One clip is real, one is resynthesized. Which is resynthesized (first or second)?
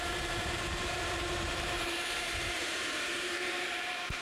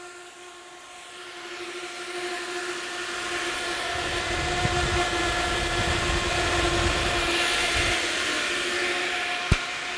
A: first